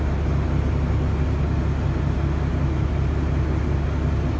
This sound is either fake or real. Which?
real